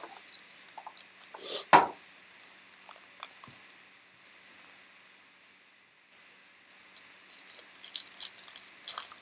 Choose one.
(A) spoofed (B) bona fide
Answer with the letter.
B